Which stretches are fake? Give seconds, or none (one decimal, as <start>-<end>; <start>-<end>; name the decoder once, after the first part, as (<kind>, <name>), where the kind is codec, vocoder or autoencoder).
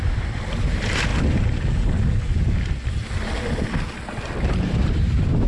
0.0-1.1 (vocoder, BigVGAN v2); 4.4-5.5